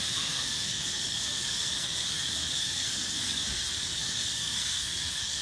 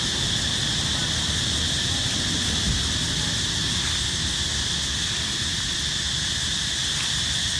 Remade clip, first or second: first